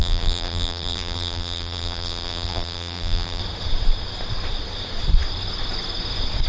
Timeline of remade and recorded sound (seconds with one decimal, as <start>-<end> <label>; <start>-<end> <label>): 0.0-3.4 remade; 3.4-6.5 recorded